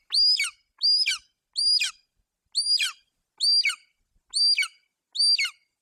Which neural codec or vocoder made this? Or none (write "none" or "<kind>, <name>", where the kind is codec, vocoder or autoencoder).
none